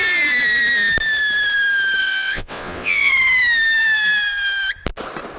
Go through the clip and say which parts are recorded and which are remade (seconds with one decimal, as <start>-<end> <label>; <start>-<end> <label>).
0.0-2.0 recorded; 2.0-3.1 remade; 3.1-5.4 recorded